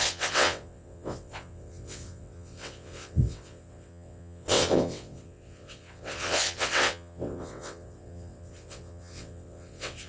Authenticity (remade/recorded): remade